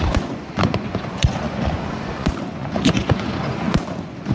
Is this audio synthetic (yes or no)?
yes